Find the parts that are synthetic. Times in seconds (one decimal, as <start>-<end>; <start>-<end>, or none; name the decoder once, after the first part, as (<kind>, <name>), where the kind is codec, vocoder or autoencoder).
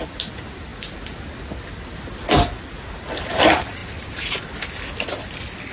none